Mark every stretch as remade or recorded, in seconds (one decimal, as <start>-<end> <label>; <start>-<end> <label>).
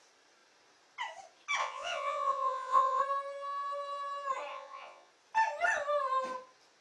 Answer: 0.0-1.6 recorded; 1.6-3.0 remade; 3.0-4.5 recorded; 4.5-5.1 remade; 5.1-6.8 recorded